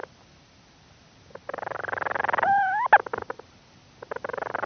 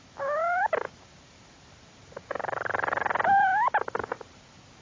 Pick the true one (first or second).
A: first